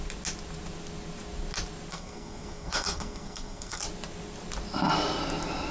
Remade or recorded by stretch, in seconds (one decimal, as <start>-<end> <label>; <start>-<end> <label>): 0.0-1.9 recorded; 1.9-3.8 remade; 3.8-5.7 recorded